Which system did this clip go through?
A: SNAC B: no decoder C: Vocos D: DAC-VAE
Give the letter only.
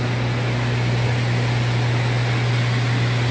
B